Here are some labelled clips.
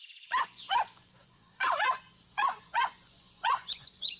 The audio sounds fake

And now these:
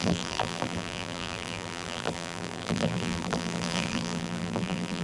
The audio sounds fake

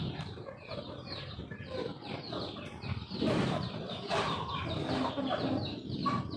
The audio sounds fake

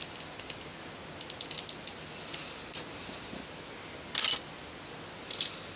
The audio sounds real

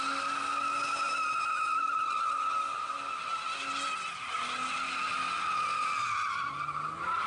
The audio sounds real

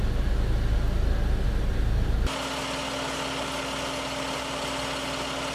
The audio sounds real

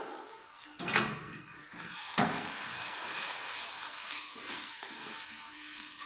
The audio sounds fake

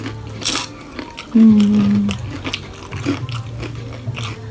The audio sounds real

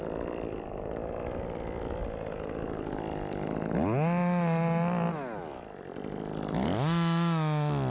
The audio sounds real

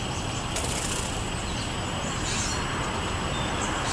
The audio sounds real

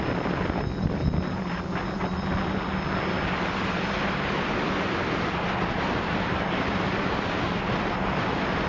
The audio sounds real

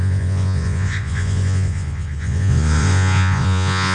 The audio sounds fake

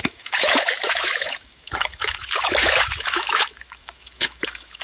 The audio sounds fake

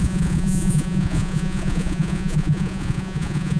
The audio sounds fake